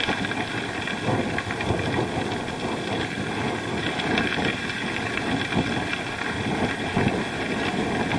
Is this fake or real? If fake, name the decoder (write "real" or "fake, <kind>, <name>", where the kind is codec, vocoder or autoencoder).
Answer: real